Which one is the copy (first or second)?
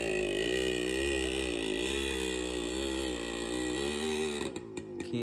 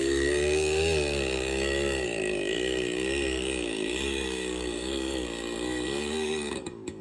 second